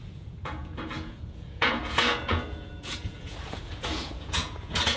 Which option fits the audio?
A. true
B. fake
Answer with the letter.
B